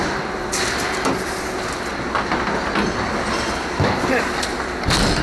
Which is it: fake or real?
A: real